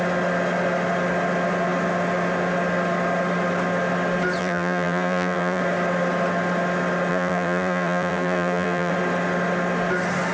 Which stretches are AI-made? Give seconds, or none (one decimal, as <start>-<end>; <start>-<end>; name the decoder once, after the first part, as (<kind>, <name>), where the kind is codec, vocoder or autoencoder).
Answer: 4.4-5.6 (vocoder, BigVGAN v2); 7.1-8.9